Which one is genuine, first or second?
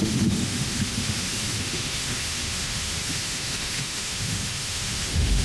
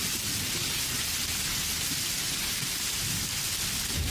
second